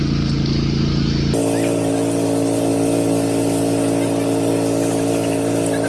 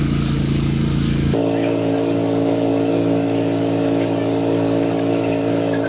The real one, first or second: first